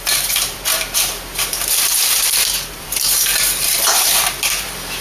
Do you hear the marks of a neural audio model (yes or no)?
yes